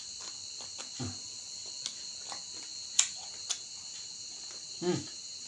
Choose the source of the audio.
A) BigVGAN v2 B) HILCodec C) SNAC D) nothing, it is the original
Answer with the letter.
D